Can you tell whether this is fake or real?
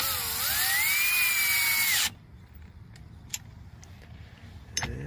real